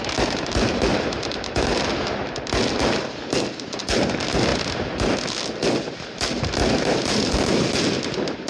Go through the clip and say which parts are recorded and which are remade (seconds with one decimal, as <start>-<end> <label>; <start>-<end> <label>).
0.0-8.5 recorded